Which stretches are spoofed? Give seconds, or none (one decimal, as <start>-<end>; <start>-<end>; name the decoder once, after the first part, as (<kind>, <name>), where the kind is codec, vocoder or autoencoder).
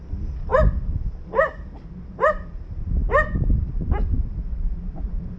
none